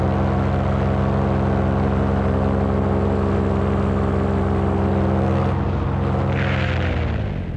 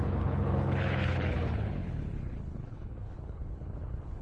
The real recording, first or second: first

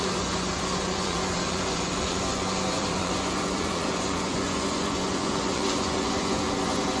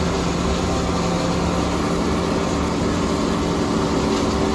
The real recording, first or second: second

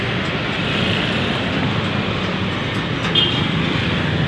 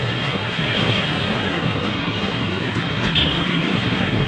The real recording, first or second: first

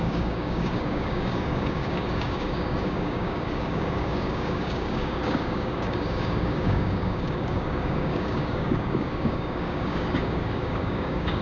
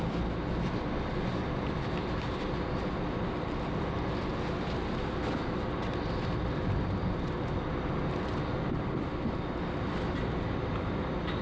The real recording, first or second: second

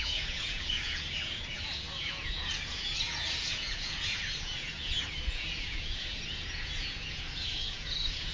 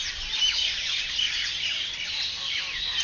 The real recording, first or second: second